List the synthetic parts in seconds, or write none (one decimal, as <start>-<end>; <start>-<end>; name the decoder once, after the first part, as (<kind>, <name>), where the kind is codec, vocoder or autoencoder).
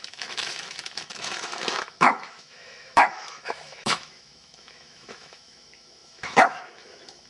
0.0-7.3 (autoencoder, DAC-VAE)